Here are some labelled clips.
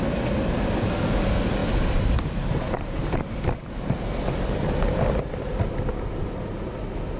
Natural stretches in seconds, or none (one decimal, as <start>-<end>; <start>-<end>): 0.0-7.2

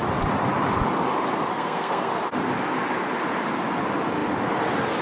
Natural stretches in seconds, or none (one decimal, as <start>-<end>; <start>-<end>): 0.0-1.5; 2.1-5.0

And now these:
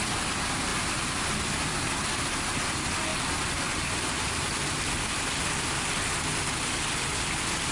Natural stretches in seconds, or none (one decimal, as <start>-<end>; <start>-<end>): 0.0-0.7; 1.8-7.7

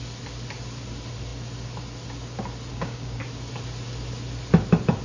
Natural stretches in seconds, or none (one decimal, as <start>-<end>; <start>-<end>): 0.0-2.7; 3.2-5.0

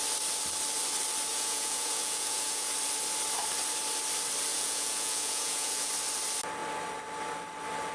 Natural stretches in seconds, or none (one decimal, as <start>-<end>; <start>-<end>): 0.0-1.3; 2.7-4.5; 5.9-7.9